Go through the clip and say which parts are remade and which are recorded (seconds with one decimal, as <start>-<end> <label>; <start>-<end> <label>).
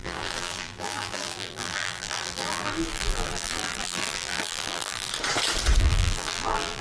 0.0-5.1 remade; 5.1-5.8 recorded; 5.8-6.8 remade